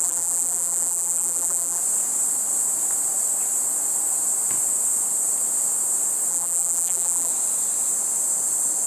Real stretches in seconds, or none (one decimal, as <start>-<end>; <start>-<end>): 1.8-6.3; 7.3-8.9